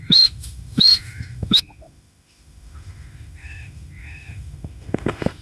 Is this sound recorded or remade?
remade